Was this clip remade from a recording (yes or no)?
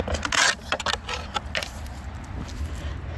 no